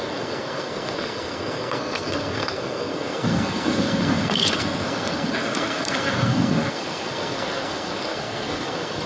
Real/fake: fake